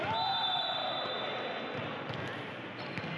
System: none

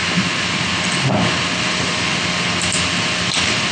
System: none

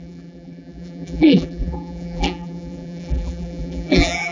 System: vocoder, BigVGAN v2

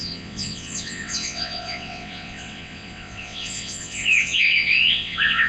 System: vocoder, WaveNeXt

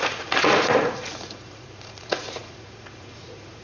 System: vocoder, Vocos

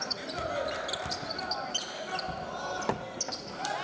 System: none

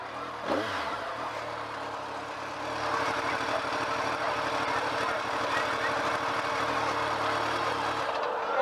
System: none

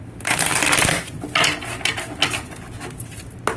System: none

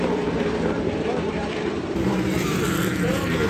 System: vocoder, BigVGAN v2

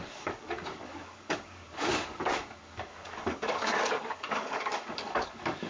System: codec, DAC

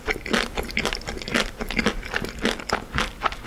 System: none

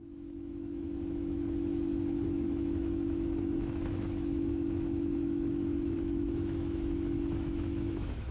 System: autoencoder, DAC-VAE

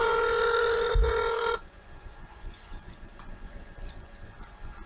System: vocoder, Vocos